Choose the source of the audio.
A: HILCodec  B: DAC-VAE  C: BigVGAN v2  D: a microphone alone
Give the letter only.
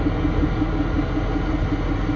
D